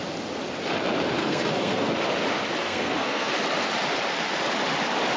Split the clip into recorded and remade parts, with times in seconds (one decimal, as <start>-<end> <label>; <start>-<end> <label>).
0.0-1.2 recorded; 1.2-1.9 remade; 1.9-2.6 recorded; 2.6-3.3 remade; 3.3-5.2 recorded